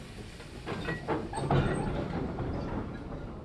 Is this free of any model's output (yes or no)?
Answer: yes